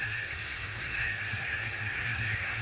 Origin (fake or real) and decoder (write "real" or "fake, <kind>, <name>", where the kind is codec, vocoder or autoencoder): fake, codec, SNAC